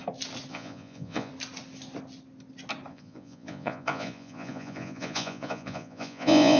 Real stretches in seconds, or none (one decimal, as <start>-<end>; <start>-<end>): 0.0-0.5; 1.3-2.9